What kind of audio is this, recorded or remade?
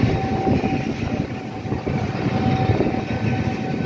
recorded